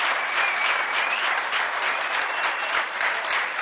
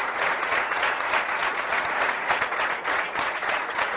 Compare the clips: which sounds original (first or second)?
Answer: first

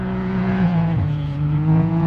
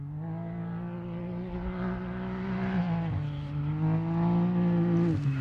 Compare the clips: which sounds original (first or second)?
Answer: second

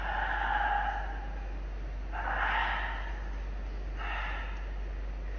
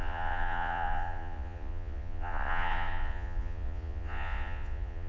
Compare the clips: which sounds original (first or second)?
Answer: first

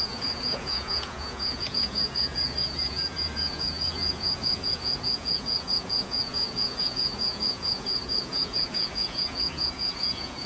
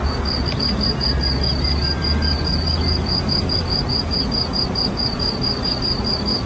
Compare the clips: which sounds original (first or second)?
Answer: second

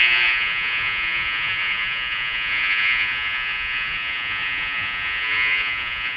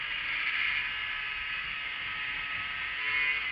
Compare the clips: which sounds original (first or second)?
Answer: second